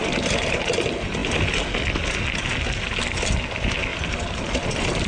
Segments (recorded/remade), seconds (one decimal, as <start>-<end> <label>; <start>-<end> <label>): 0.0-0.6 remade; 0.6-3.9 recorded; 3.9-4.4 remade; 4.4-5.1 recorded